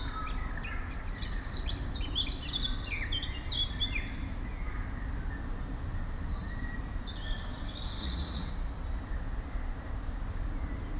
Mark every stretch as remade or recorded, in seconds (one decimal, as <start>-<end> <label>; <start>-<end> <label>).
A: 0.0-8.0 recorded; 8.0-8.5 remade; 8.5-11.0 recorded